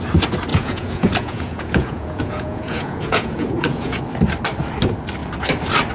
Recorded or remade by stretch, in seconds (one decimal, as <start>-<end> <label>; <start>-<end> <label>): 0.0-0.5 recorded; 0.5-4.0 remade; 4.0-5.9 recorded